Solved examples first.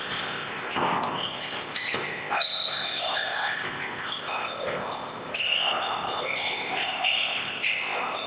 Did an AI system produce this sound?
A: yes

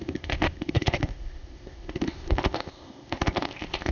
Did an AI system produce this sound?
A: yes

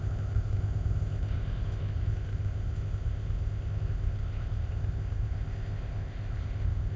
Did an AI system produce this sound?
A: yes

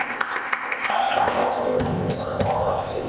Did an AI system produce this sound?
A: yes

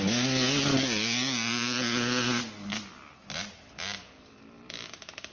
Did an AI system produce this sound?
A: no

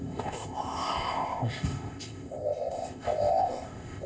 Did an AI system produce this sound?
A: yes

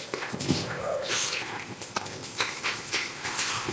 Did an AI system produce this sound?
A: yes